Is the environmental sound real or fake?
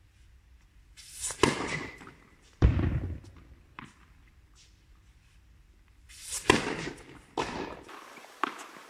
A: fake